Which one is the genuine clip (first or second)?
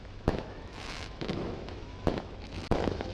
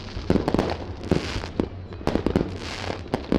second